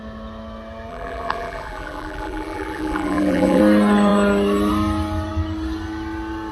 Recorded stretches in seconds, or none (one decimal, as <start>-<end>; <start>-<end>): 0.0-0.9; 3.6-6.5